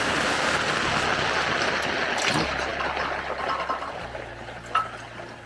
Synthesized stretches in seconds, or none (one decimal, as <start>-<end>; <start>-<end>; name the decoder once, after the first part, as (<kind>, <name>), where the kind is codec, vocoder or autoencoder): none